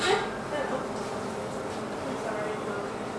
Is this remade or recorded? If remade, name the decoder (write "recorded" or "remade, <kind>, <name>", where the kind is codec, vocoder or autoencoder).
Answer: recorded